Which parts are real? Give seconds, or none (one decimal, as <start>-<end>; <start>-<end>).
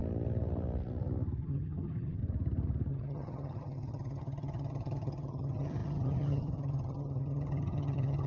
0.0-1.4; 2.2-2.9